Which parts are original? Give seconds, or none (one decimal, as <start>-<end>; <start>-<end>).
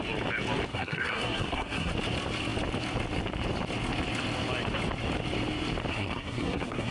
0.0-0.7; 1.9-5.9